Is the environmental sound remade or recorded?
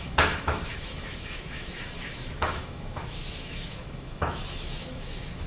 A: remade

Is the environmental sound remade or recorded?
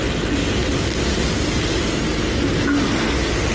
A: recorded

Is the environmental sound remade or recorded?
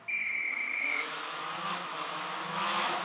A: remade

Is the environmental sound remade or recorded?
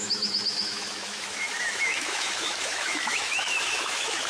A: remade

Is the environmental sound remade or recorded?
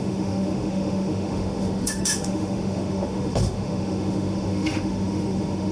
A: remade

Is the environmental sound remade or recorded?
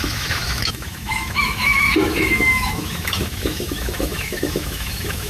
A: remade